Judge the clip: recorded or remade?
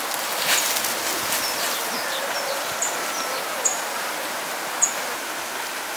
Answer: recorded